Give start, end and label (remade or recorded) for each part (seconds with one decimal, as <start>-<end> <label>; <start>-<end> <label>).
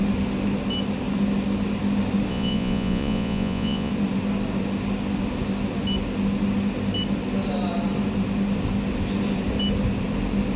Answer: 0.0-2.3 recorded; 2.3-3.9 remade; 3.9-10.6 recorded